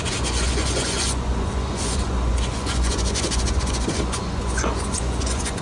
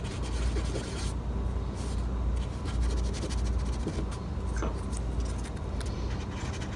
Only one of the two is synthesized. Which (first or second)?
first